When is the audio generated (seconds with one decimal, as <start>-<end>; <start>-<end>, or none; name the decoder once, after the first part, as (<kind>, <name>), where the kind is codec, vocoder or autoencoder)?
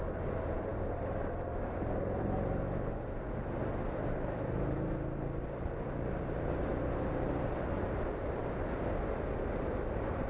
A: none